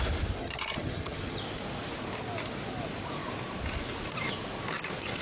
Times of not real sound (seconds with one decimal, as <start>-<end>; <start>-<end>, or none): 0.4-1.4